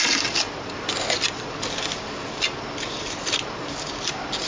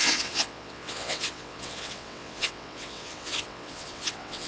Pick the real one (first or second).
first